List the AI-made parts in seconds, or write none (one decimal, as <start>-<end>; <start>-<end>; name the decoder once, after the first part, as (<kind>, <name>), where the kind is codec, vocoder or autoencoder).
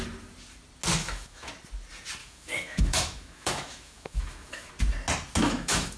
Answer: 1.0-1.5 (autoencoder, DAC-VAE); 2.2-4.7; 5.4-6.0